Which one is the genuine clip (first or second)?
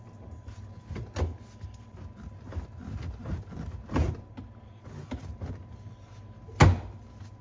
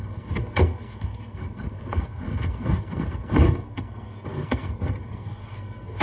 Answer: first